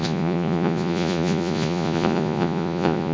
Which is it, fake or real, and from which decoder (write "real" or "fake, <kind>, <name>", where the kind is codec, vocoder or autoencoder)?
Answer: fake, vocoder, Vocos